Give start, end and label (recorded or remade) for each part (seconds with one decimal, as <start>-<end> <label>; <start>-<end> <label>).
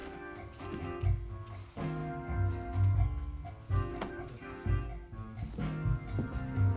0.0-0.8 remade; 0.8-3.9 recorded; 3.9-4.4 remade; 4.4-6.8 recorded